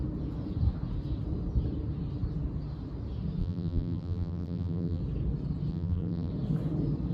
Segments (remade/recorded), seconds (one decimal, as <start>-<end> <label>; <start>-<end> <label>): 0.0-3.4 recorded; 3.4-5.0 remade; 5.0-5.7 recorded; 5.7-6.3 remade; 6.3-7.1 recorded